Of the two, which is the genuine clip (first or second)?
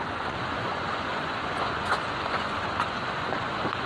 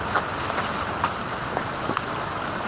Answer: second